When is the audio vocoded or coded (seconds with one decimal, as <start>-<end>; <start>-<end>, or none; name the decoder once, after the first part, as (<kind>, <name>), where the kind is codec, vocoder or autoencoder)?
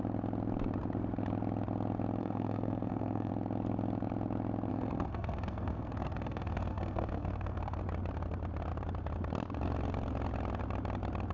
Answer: 2.2-3.3 (codec, SNAC); 4.7-7.8